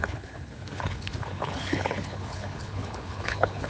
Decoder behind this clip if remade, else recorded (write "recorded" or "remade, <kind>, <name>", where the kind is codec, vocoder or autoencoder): remade, codec, HILCodec